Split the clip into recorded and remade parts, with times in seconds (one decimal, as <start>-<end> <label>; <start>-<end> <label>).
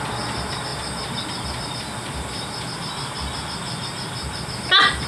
0.0-5.1 recorded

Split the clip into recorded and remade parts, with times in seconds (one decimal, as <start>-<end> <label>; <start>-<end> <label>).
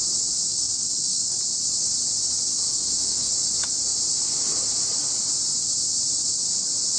0.0-0.5 recorded; 0.5-1.4 remade; 1.4-2.5 recorded; 2.5-3.3 remade; 3.3-7.0 recorded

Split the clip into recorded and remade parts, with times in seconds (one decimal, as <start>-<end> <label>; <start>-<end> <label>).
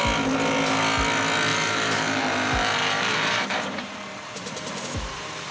0.0-1.5 recorded; 1.5-4.8 remade; 4.8-5.5 recorded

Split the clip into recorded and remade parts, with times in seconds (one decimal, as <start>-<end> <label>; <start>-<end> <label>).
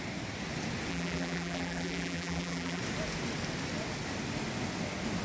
0.0-0.9 recorded; 0.9-2.8 remade; 2.8-5.2 recorded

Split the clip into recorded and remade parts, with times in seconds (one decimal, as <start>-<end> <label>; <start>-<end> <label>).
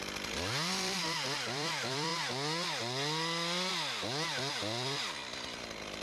0.0-2.1 remade; 2.1-5.6 recorded; 5.6-6.0 remade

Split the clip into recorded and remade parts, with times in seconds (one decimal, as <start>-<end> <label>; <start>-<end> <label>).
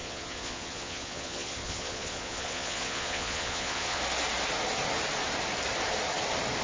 0.0-4.0 remade; 4.0-6.6 recorded